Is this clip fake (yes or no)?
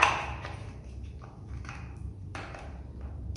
yes